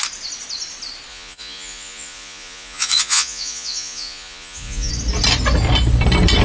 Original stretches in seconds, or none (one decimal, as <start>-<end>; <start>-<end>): 0.0-1.1; 4.9-6.4